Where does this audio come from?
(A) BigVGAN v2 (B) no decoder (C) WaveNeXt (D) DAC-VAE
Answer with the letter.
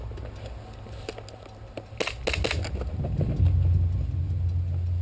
B